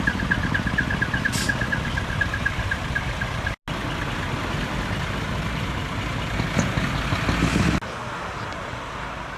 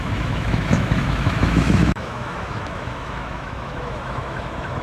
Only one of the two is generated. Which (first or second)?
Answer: second